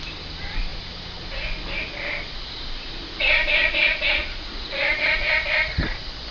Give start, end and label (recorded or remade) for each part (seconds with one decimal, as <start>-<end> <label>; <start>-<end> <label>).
0.0-3.6 recorded; 3.6-5.0 remade; 5.0-6.3 recorded